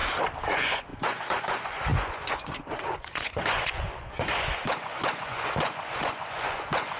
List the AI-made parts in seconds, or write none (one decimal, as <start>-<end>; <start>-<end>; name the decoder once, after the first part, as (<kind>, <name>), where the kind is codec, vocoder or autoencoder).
0.5-7.0 (vocoder, Vocos)